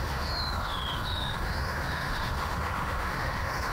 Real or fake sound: fake